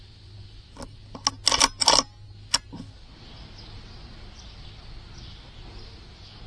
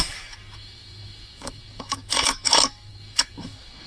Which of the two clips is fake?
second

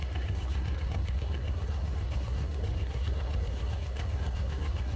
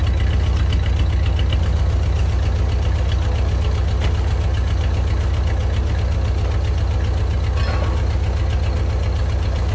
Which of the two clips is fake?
first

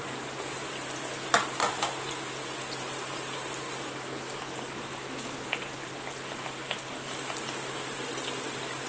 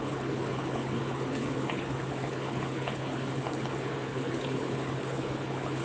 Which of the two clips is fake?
second